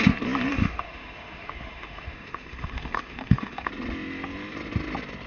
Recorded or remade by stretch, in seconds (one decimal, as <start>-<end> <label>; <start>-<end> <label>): 0.0-0.5 recorded; 0.5-3.7 remade; 3.7-5.3 recorded